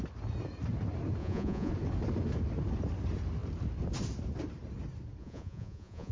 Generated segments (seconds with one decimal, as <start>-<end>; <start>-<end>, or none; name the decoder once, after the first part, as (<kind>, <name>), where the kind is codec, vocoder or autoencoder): 1.2-1.7 (vocoder, Vocos); 5.2-6.1